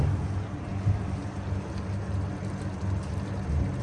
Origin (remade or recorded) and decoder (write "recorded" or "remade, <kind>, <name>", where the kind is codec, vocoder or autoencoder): recorded